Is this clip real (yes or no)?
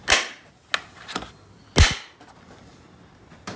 yes